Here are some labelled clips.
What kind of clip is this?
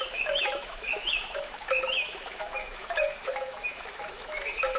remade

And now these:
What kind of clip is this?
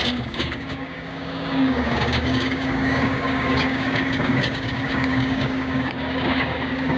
remade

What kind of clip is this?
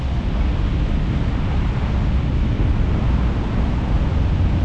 recorded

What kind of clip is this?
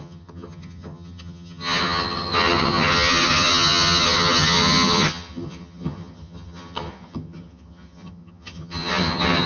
remade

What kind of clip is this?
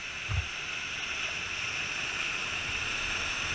recorded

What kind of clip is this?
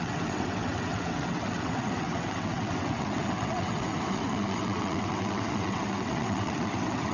remade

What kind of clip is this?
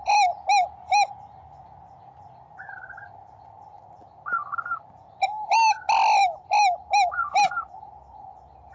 recorded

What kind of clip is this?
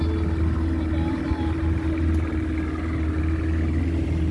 recorded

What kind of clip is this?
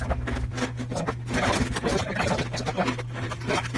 recorded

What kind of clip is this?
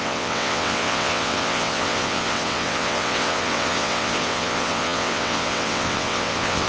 remade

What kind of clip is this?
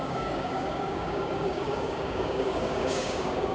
remade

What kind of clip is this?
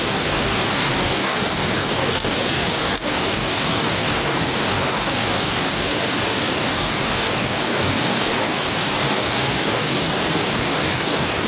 remade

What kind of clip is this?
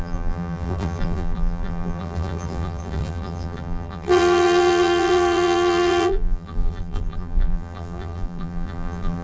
remade